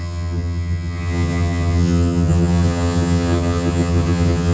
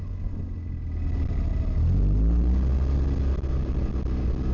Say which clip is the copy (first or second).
first